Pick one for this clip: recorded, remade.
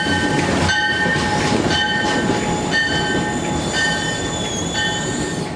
recorded